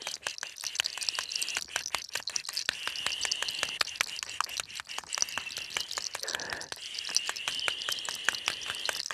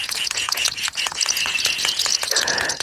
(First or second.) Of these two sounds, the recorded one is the first